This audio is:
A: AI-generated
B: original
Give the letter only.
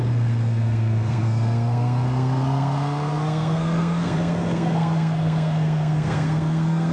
A